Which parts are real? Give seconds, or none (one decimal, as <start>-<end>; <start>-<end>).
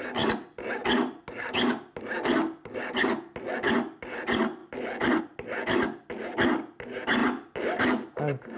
0.0-8.6